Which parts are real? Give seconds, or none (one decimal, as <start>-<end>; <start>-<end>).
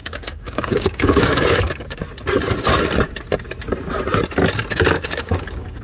2.0-4.7